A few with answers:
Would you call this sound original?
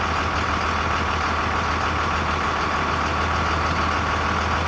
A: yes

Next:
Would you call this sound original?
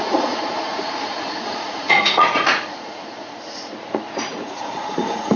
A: no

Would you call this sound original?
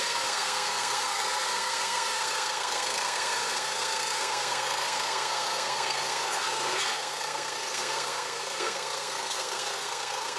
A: no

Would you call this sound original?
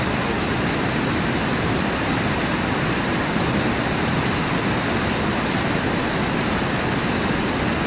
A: yes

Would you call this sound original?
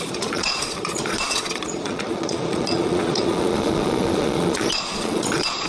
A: no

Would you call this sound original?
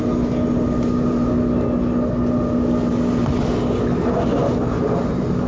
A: yes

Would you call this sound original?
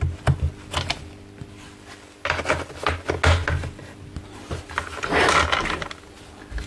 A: yes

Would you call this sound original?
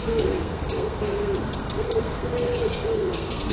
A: no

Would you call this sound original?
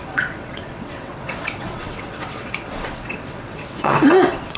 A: no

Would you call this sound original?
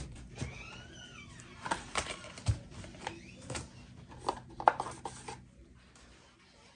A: yes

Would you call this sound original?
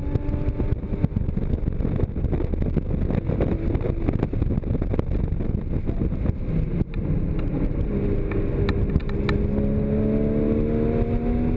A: yes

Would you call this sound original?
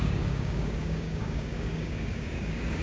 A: no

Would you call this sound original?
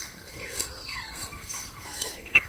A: no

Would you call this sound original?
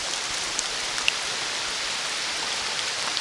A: yes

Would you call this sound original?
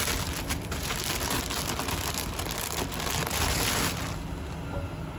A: yes